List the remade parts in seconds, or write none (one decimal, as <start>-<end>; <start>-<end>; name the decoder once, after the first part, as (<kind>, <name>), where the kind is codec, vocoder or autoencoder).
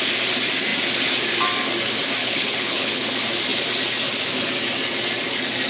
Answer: 2.2-3.1 (codec, HILCodec)